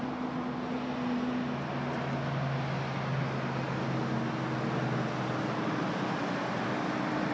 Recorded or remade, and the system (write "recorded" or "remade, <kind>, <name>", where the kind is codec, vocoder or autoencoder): recorded